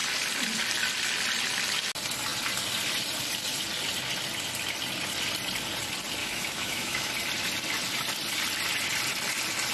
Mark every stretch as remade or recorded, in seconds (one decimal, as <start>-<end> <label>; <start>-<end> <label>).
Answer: 0.0-6.2 recorded; 6.2-7.1 remade; 7.1-9.7 recorded